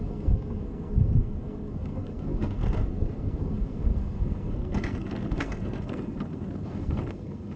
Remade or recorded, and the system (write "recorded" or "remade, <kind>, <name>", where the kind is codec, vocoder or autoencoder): remade, codec, SNAC